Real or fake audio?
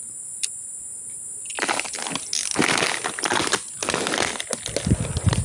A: real